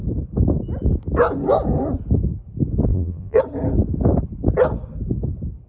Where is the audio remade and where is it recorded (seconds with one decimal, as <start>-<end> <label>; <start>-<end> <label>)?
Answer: 0.0-2.9 recorded; 2.9-3.4 remade; 3.4-5.7 recorded